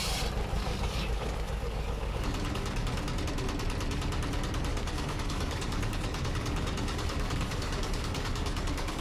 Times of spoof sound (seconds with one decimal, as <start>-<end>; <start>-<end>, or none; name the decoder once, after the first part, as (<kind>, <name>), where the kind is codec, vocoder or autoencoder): 0.5-3.2 (codec, DAC); 4.7-9.0